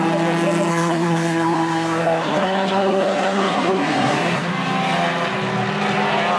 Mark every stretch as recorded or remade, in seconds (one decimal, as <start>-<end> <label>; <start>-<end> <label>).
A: 0.0-0.7 recorded; 0.7-4.5 remade; 4.5-6.4 recorded